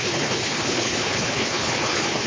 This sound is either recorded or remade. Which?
remade